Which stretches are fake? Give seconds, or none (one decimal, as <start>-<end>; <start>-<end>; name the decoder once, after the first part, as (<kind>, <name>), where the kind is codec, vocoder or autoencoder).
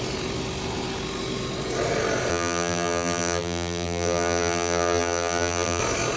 2.3-5.8 (vocoder, BigVGAN v2)